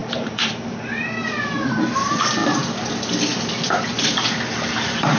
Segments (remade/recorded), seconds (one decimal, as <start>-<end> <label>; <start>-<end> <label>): 0.0-2.4 remade; 2.4-4.7 recorded; 4.7-5.2 remade